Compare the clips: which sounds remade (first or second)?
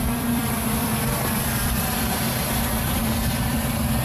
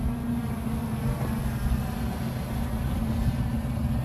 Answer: first